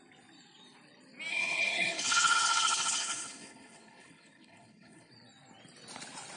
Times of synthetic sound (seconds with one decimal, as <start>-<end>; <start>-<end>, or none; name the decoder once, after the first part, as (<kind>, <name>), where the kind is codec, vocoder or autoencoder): 1.3-5.1 (codec, HILCodec)